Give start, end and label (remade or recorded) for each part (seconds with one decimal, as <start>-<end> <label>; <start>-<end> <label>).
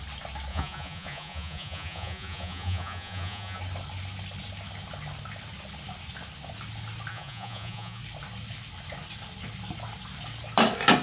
0.0-0.5 recorded; 0.5-3.6 remade; 3.6-7.1 recorded; 7.1-8.0 remade; 8.0-11.0 recorded